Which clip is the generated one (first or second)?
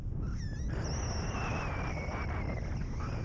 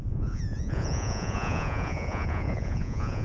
second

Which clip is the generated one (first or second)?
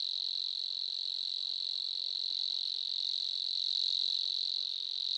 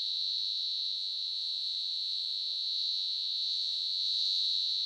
second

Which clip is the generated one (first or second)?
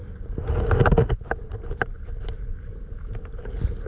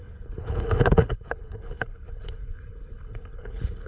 second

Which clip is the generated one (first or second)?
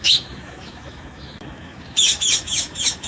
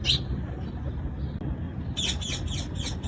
first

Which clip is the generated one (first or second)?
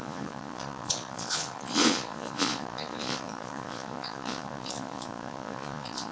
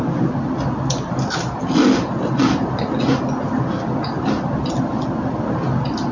first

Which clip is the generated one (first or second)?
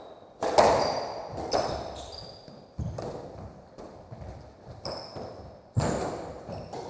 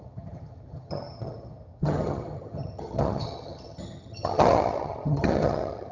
second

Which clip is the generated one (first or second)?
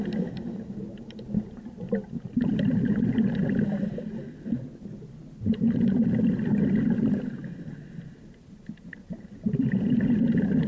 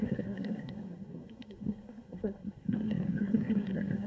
second